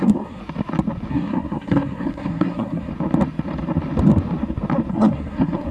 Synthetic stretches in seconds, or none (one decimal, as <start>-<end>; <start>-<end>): 0.0-0.4; 1.1-2.9; 4.9-5.7

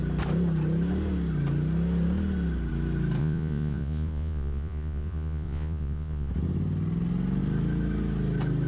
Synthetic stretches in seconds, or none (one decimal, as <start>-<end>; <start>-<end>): 3.2-6.3

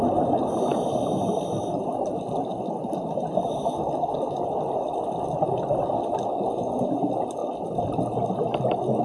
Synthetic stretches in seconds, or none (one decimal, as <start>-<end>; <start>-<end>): none